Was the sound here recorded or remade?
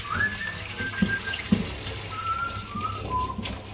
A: recorded